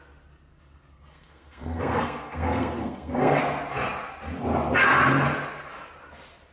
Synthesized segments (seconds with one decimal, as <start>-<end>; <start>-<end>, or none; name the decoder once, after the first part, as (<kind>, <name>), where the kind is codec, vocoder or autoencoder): 0.5-3.4 (codec, SNAC)